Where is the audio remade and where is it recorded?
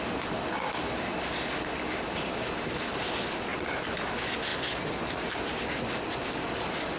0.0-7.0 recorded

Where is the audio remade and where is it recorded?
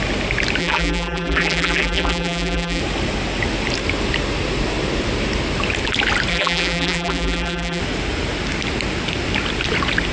0.0-0.6 recorded; 0.6-2.8 remade; 2.8-6.3 recorded; 6.3-7.8 remade; 7.8-10.1 recorded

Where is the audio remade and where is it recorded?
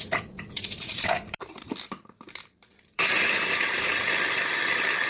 0.0-0.9 recorded; 0.9-4.0 remade; 4.0-5.1 recorded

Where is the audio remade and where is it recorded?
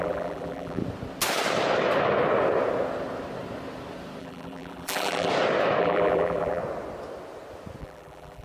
0.0-0.8 remade; 0.8-4.2 recorded; 4.2-5.3 remade; 5.3-5.8 recorded; 5.8-6.6 remade; 6.6-7.8 recorded; 7.8-8.4 remade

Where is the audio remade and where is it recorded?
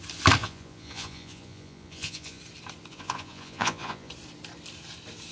0.0-0.4 recorded; 0.4-2.4 remade; 2.4-2.9 recorded; 2.9-4.1 remade; 4.1-5.3 recorded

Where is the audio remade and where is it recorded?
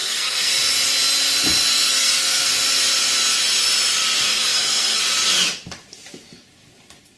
0.0-0.5 remade; 0.5-1.7 recorded; 1.7-2.5 remade; 2.5-4.3 recorded; 4.3-5.0 remade; 5.0-7.2 recorded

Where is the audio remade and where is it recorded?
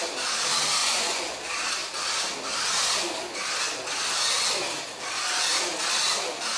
0.0-0.8 recorded; 0.8-1.4 remade; 1.4-6.6 recorded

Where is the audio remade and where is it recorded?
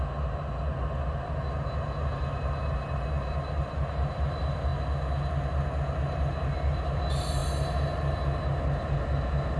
0.0-9.6 recorded